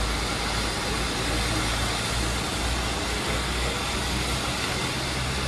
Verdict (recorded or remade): recorded